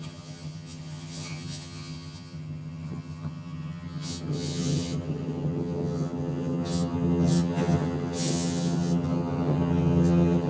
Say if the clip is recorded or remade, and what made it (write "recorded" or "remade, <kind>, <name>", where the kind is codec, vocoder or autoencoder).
remade, vocoder, HiFi-GAN